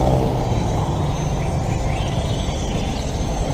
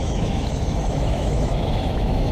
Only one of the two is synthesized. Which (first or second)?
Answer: second